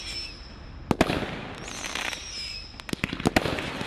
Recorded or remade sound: recorded